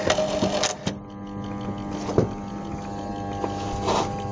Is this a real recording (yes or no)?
yes